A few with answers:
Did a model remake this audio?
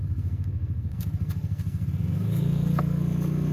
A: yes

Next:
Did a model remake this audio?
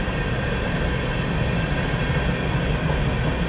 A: no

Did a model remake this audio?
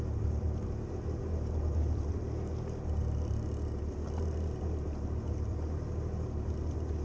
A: no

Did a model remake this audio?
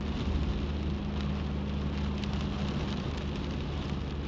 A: no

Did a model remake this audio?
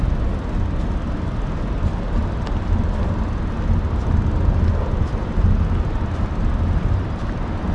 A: no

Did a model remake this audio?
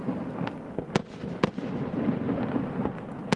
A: no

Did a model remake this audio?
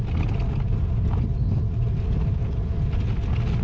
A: no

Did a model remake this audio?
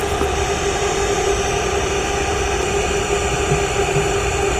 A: no